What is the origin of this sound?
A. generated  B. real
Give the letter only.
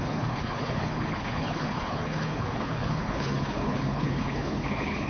A